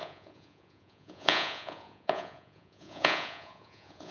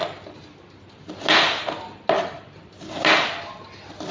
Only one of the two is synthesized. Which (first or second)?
first